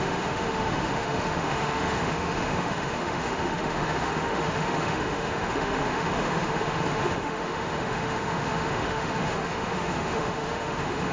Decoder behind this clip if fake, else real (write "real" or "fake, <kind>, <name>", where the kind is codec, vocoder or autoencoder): fake, autoencoder, DAC-VAE